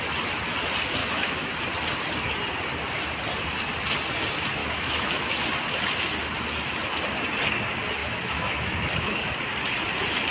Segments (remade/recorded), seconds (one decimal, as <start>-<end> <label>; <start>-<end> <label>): 0.0-1.0 recorded; 1.0-1.6 remade; 1.6-4.6 recorded; 4.6-5.3 remade; 5.3-8.0 recorded; 8.0-9.2 remade; 9.2-10.3 recorded